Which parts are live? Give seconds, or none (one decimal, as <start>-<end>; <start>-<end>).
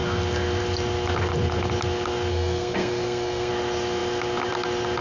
0.0-2.3; 3.5-5.0